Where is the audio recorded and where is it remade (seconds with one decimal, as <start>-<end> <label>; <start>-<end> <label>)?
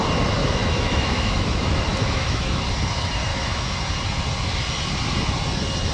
0.0-0.4 recorded; 0.4-2.6 remade; 2.6-3.3 recorded; 3.3-3.8 remade; 3.8-5.9 recorded